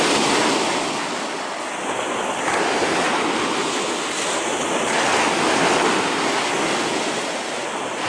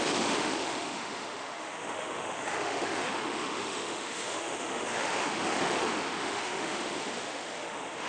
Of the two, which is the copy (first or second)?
second